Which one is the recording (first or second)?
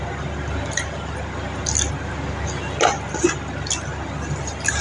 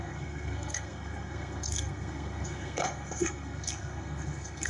first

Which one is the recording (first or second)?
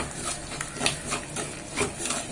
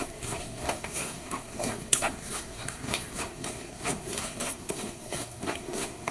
first